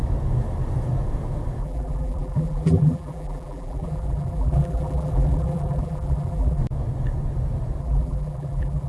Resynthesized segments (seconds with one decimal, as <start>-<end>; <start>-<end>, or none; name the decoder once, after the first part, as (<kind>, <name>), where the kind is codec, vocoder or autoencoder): 1.6-6.6 (vocoder, BigVGAN v2); 7.8-8.9